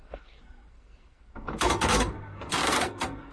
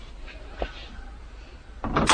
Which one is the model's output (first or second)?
first